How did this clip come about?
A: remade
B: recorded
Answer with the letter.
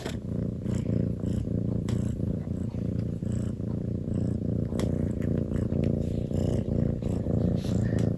B